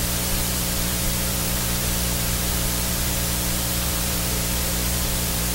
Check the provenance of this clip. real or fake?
fake